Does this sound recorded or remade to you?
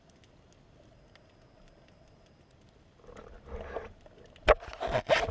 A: recorded